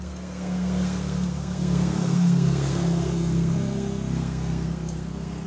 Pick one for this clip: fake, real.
fake